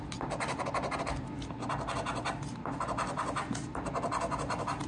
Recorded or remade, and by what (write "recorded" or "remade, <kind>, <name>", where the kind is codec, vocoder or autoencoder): recorded